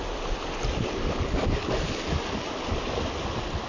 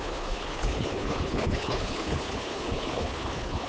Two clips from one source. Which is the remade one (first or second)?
second